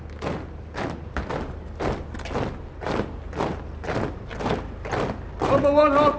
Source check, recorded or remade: recorded